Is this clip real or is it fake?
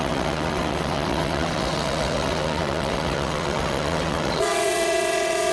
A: fake